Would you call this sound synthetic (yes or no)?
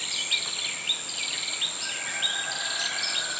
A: no